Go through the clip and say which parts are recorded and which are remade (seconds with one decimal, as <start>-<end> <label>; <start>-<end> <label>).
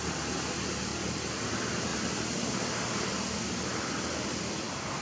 0.0-5.0 recorded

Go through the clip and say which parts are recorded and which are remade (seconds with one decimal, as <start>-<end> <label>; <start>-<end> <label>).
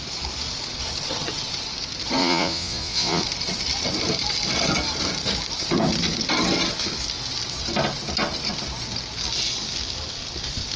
0.0-2.2 recorded; 2.2-3.2 remade; 3.2-10.8 recorded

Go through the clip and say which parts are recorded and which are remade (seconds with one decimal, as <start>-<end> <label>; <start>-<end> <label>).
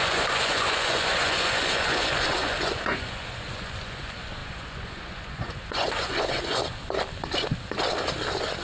0.0-6.6 remade; 6.6-8.6 recorded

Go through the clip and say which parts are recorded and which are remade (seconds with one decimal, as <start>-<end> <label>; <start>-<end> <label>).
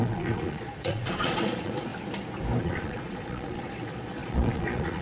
0.0-1.9 remade; 1.9-2.6 recorded; 2.6-5.0 remade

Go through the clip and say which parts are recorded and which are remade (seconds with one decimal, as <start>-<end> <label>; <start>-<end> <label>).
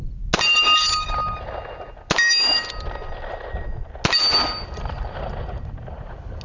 0.0-6.4 recorded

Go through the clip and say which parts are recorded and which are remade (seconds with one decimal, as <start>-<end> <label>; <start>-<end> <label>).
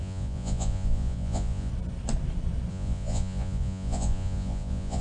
0.0-1.7 remade; 1.7-2.7 recorded; 2.7-5.0 remade